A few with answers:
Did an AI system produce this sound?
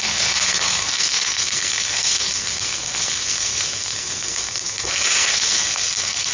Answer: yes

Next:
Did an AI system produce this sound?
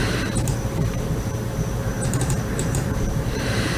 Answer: yes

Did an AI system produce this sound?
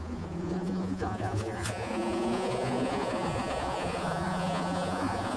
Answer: yes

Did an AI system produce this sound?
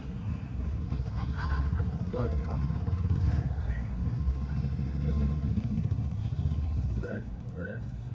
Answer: yes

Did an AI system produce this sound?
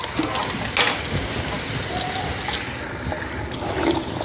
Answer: no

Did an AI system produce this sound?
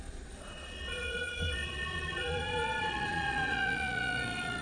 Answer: yes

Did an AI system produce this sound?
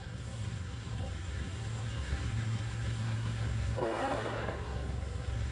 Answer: yes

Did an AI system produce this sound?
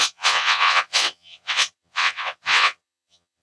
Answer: yes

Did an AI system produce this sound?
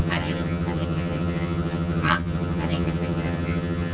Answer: yes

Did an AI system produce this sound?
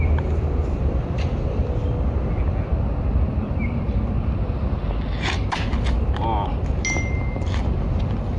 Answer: no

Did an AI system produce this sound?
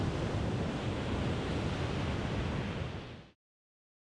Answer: no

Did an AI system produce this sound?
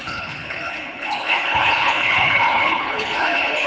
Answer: yes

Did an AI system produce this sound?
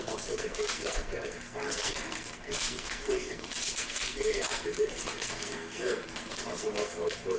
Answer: yes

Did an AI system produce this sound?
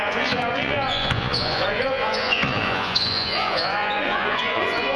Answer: yes